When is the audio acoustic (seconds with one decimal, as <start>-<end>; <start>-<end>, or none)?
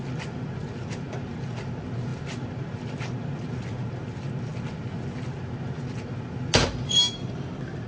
0.0-7.9